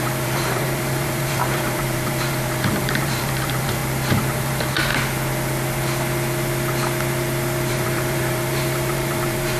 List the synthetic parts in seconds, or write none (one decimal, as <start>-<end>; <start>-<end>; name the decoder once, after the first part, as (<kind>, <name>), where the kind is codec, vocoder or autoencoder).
0.0-3.8 (vocoder, BigVGAN v2); 4.4-4.9; 7.7-9.6